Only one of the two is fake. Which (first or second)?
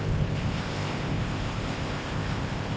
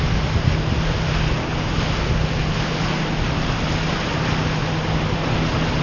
first